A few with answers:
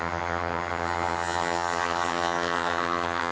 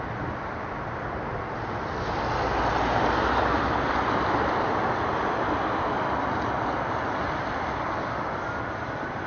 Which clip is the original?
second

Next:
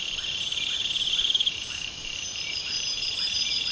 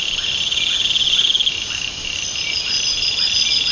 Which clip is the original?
second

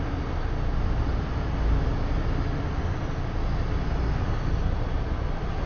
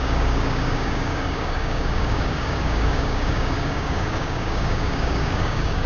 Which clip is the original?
first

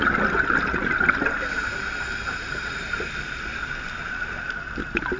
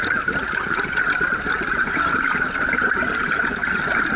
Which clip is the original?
first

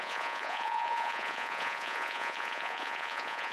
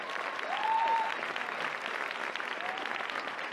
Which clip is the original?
second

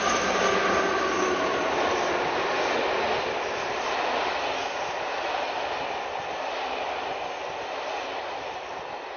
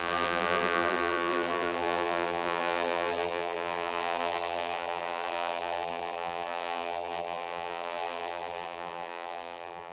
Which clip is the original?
first